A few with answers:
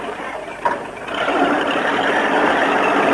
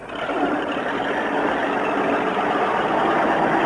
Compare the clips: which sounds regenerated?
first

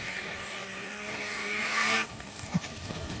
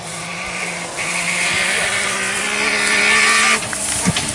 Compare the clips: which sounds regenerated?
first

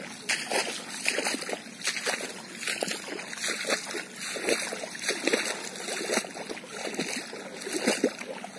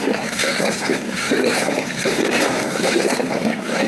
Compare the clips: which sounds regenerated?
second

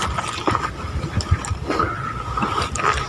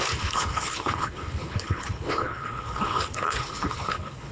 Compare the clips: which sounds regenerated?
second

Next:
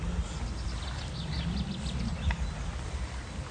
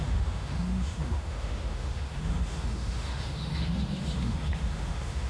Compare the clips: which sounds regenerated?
second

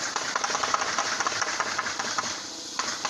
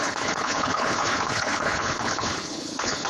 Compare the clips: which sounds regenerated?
second